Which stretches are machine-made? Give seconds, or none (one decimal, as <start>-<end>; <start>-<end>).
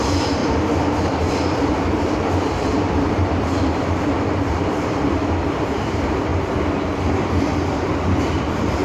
0.0-6.3; 8.2-8.8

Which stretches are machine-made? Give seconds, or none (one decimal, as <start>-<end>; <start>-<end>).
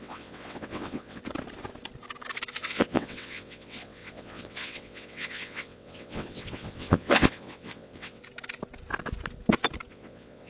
0.0-1.2; 2.6-8.2; 9.9-10.5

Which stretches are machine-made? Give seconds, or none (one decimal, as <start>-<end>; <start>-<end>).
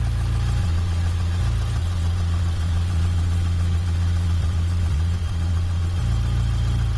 0.6-1.4; 1.8-6.0